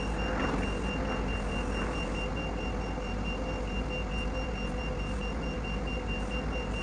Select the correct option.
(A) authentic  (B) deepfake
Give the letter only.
A